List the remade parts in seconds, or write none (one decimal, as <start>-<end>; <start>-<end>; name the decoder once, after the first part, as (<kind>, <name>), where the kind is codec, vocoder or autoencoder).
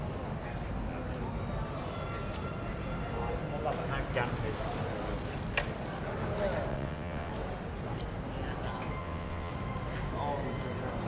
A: 6.7-7.3 (vocoder, WaveNeXt); 9.0-9.5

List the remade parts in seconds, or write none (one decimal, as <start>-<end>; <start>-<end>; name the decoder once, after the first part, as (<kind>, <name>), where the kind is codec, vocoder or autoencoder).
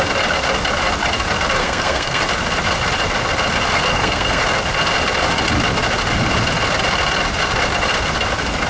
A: 1.6-2.2 (codec, SNAC); 3.9-4.4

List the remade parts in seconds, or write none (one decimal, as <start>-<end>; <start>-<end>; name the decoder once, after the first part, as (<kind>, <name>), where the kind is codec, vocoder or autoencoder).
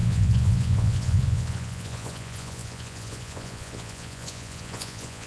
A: 0.0-5.3 (vocoder, Vocos)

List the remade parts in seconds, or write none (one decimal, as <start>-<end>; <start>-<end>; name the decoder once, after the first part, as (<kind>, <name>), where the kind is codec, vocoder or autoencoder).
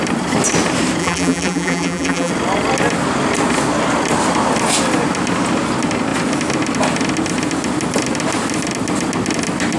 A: 1.0-2.3 (vocoder, BigVGAN v2)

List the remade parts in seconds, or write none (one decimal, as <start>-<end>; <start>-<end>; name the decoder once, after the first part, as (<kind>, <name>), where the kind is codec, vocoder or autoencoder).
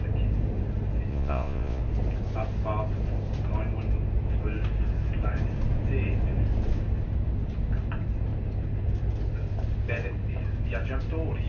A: 1.1-1.8 (vocoder, Vocos)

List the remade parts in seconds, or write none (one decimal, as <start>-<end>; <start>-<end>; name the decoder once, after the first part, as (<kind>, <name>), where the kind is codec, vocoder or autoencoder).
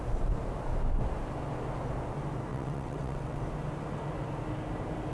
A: 2.5-3.4 (vocoder, WaveNeXt)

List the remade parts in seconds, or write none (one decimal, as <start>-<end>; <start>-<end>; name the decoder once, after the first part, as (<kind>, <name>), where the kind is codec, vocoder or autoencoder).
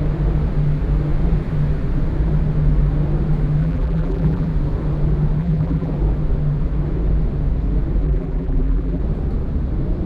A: 3.6-4.5 (vocoder, BigVGAN v2); 5.4-5.9; 8.0-9.0